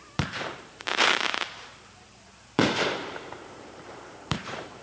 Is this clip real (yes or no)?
no